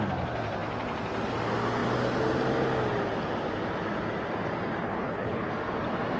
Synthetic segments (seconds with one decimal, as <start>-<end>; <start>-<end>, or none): 4.8-5.5